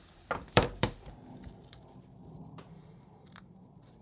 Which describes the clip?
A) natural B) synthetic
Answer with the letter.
B